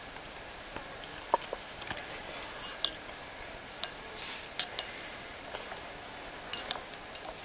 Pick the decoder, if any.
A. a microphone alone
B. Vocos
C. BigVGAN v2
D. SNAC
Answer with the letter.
A